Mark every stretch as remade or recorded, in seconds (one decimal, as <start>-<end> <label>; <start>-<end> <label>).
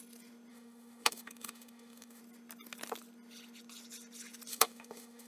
0.0-0.5 recorded; 0.5-2.2 remade; 2.2-4.5 recorded; 4.5-5.3 remade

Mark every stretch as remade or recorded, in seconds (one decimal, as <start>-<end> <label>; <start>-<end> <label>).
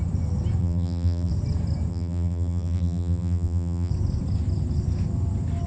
0.0-0.6 recorded; 0.6-1.3 remade; 1.3-1.9 recorded; 1.9-3.9 remade; 3.9-5.7 recorded